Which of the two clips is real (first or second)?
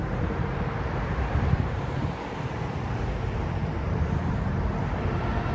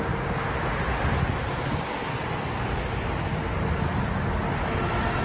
second